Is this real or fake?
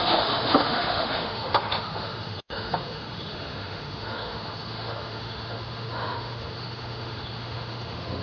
fake